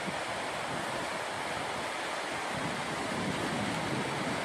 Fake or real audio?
real